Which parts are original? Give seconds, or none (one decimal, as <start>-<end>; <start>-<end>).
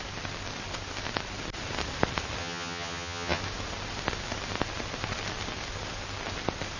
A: 0.0-2.4; 3.4-6.8